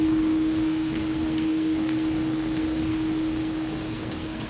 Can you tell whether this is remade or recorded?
remade